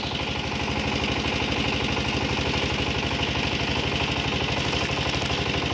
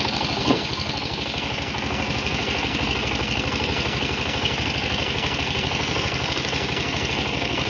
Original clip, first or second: first